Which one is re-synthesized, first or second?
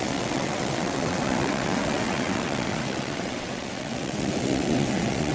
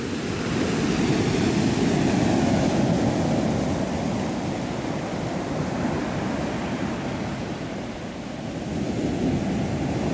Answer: first